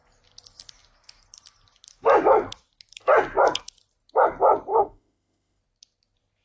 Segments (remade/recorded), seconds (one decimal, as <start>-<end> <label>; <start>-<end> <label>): 0.0-4.7 recorded; 4.7-5.6 remade; 5.6-6.4 recorded